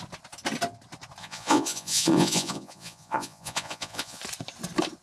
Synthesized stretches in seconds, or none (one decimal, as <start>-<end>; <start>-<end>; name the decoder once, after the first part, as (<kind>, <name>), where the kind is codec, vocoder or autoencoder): 1.2-4.2 (vocoder, Vocos)